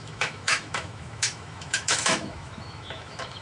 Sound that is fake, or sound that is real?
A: fake